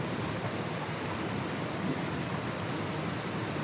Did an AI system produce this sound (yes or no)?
no